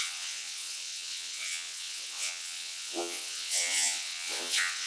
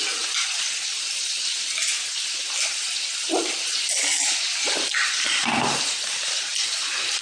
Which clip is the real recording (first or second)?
second